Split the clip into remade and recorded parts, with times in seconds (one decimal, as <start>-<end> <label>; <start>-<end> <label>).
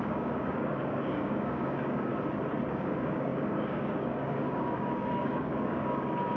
0.0-2.1 remade; 2.1-2.7 recorded; 2.7-6.4 remade